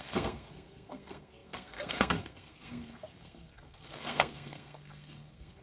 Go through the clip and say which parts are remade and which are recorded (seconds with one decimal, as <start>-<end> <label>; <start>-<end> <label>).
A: 0.0-5.6 remade